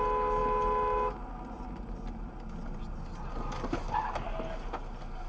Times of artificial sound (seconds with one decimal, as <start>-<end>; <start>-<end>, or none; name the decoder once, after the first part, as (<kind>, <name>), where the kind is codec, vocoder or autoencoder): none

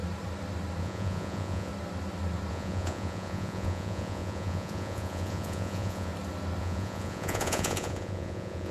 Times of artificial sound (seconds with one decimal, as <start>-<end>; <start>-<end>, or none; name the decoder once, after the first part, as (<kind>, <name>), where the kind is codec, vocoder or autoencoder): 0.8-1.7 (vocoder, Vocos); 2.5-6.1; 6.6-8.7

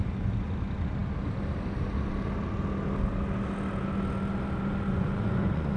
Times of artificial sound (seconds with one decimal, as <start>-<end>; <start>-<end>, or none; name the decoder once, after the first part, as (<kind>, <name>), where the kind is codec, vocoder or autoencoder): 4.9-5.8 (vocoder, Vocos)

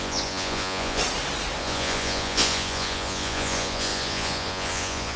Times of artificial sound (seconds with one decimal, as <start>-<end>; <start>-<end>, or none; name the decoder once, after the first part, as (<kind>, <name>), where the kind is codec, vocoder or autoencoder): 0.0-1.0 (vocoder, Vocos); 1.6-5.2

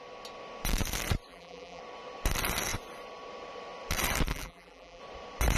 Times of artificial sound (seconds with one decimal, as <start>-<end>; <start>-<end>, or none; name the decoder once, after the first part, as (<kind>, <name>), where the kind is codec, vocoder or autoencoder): 1.3-1.8 (vocoder, BigVGAN v2); 4.3-5.0

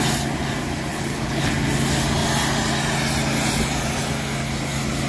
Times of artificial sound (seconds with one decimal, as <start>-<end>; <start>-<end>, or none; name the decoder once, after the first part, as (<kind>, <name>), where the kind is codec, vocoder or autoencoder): 0.9-1.5 (codec, HILCodec)

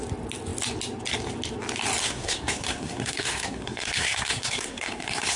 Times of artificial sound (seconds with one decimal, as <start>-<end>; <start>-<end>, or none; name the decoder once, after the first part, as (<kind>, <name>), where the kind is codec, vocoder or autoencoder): 2.0-5.4 (codec, SNAC)

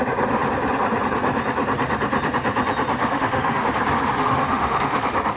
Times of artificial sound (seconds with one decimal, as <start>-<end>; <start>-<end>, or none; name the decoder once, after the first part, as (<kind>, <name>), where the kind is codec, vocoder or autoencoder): 3.0-3.7 (autoencoder, DAC-VAE); 4.2-5.0